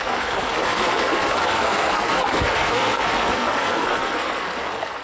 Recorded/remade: remade